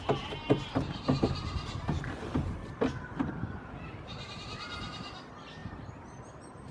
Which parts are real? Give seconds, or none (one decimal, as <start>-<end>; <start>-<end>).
0.0-6.7